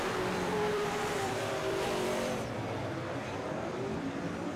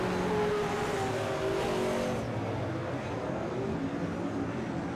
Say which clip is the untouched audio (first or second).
second